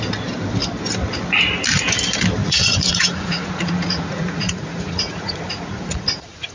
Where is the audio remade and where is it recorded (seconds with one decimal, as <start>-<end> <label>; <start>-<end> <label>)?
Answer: 0.0-2.4 recorded; 2.4-6.5 remade